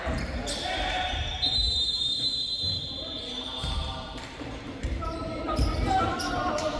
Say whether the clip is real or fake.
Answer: fake